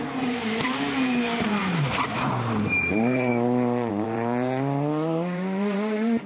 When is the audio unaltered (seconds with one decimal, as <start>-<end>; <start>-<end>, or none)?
1.6-2.2